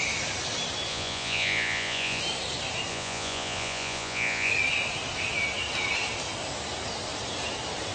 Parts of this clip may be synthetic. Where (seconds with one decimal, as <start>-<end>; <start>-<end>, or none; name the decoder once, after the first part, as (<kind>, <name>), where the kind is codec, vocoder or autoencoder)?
0.9-2.2 (vocoder, Vocos); 2.9-4.5